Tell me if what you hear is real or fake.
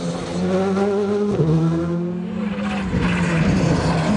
real